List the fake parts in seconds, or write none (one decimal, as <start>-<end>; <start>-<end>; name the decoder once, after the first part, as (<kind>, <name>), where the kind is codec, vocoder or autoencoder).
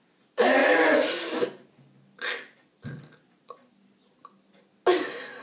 none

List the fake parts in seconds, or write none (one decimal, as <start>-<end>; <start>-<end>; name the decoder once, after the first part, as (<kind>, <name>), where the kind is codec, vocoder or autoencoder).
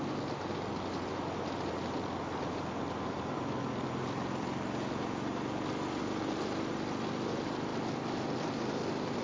none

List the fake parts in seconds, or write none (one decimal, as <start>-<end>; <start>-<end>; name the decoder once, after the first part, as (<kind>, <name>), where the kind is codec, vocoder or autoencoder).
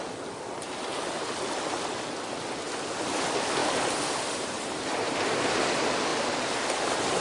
3.6-5.6 (vocoder, BigVGAN v2); 6.1-7.2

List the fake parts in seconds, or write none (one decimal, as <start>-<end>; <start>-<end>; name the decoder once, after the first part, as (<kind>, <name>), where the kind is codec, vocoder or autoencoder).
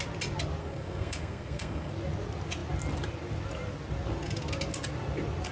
0.6-1.9 (codec, SNAC)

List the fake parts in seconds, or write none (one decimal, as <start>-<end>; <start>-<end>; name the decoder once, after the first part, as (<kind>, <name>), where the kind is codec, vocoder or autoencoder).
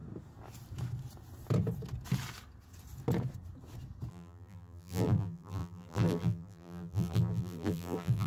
4.1-8.3 (vocoder, BigVGAN v2)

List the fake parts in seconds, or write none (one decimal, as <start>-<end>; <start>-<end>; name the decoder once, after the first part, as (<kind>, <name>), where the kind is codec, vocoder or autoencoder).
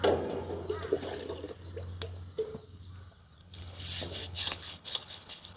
3.2-3.8 (codec, HILCodec); 4.2-5.6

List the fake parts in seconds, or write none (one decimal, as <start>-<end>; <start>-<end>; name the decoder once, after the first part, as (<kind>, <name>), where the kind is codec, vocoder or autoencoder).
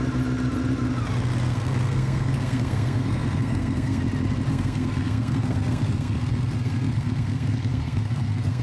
1.5-4.0 (codec, SNAC); 4.5-8.6